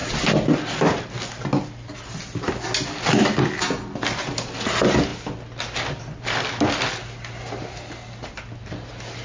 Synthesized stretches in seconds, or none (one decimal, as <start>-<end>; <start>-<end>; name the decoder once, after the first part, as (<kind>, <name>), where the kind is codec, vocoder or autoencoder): none